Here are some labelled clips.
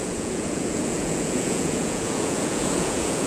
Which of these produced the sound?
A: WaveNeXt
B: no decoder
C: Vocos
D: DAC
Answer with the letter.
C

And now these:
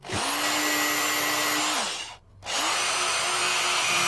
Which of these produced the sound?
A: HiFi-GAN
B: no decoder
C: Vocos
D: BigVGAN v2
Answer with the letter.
B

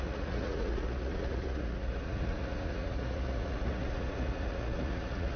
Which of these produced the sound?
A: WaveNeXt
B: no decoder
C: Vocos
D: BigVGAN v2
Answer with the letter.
C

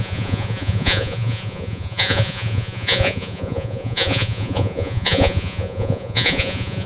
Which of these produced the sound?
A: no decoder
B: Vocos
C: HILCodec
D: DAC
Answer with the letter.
B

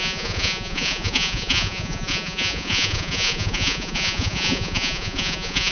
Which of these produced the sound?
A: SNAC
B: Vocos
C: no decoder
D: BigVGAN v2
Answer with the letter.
B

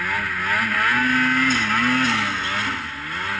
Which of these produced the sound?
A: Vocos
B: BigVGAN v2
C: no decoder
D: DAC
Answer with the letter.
C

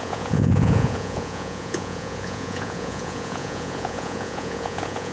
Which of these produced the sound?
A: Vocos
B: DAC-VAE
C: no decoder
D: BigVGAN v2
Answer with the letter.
A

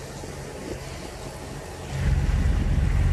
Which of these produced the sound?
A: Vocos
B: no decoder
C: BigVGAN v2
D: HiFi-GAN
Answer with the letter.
B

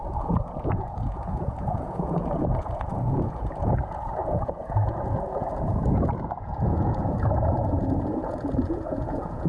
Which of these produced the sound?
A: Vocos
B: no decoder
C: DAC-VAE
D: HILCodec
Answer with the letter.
A